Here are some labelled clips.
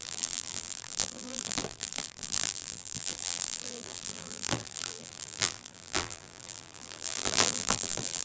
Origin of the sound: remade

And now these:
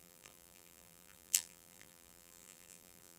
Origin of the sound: remade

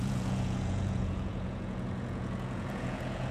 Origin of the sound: remade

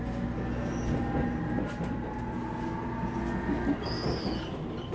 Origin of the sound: recorded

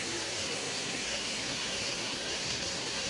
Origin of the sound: remade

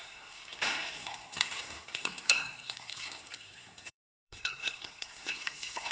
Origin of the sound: remade